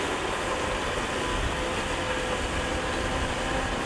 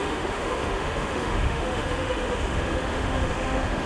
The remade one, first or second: second